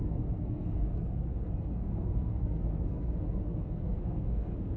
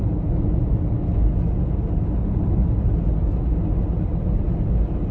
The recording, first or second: second